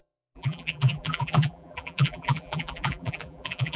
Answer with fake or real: fake